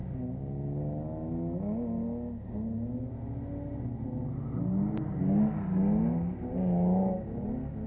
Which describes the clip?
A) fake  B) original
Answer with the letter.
B